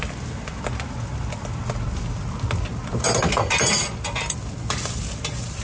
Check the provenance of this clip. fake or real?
real